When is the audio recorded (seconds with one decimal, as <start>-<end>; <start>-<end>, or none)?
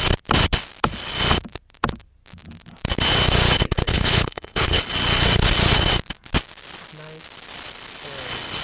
0.0-3.9; 4.8-8.6